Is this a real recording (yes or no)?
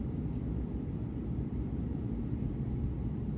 yes